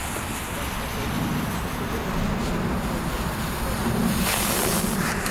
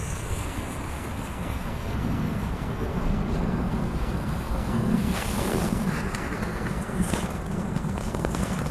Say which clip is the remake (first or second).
second